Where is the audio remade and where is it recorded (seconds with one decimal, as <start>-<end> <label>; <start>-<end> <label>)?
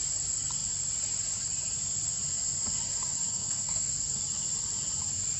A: 0.0-3.3 recorded; 3.3-3.9 remade; 3.9-5.4 recorded